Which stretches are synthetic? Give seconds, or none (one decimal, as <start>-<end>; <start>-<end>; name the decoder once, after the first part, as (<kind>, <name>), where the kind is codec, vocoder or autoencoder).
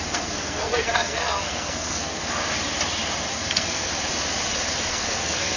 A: 0.0-2.2 (codec, SNAC); 3.3-3.9; 4.9-5.6